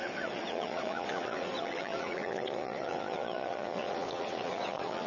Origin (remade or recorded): remade